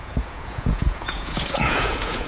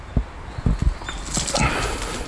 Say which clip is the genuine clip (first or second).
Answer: second